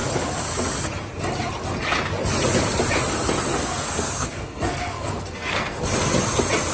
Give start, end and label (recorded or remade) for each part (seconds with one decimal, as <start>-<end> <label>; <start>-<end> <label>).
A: 0.0-3.5 recorded; 3.5-5.8 remade; 5.8-6.7 recorded